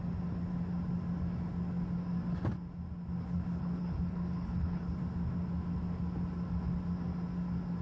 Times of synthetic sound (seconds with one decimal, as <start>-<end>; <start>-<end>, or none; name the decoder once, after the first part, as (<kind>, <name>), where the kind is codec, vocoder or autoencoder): 3.2-5.0 (codec, HILCodec)